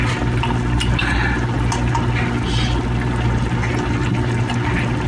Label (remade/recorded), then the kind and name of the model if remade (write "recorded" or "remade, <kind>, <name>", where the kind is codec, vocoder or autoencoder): recorded